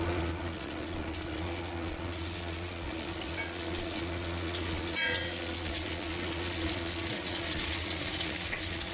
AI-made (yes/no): yes